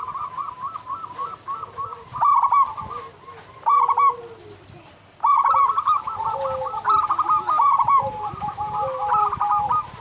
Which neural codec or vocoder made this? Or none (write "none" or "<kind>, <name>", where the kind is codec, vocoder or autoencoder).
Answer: none